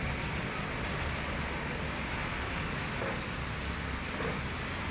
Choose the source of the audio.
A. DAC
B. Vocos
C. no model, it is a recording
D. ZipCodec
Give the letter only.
C